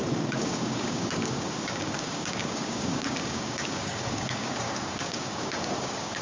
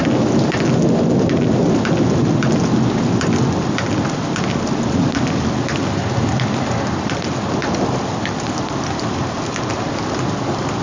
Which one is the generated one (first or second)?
first